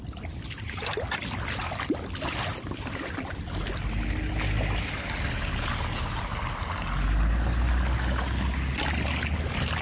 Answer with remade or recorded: recorded